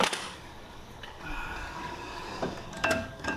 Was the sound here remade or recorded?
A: remade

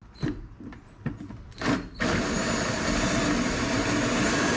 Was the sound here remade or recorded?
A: recorded